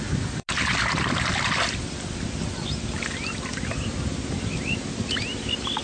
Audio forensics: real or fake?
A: real